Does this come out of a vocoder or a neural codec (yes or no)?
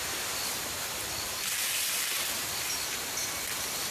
no